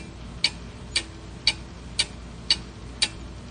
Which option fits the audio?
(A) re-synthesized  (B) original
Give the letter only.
B